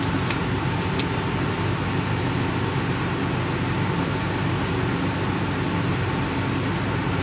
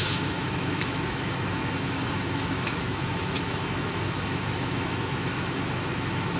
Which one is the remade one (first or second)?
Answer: second